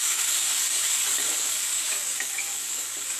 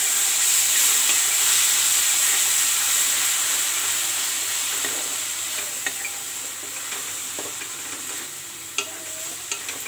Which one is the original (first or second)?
second